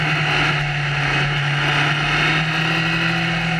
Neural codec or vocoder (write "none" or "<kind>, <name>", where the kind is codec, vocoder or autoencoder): none